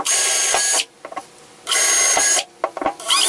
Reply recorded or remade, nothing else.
recorded